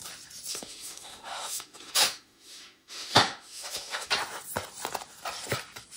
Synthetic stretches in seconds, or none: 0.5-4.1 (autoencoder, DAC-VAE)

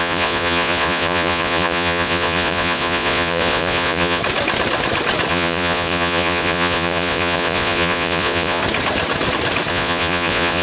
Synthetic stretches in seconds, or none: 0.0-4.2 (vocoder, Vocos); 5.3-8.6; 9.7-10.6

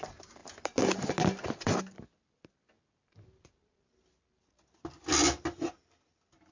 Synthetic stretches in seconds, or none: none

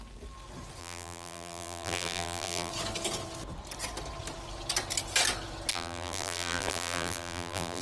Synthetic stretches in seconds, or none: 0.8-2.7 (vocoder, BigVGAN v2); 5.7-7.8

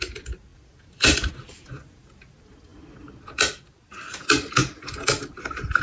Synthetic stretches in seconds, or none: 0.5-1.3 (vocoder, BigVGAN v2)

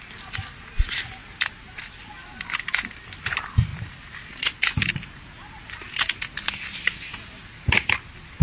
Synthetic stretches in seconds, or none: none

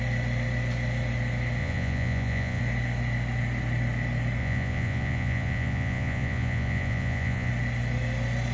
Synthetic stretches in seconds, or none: 1.6-2.6 (vocoder, Vocos); 4.4-7.5